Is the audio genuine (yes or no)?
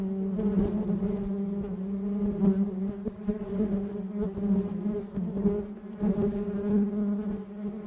yes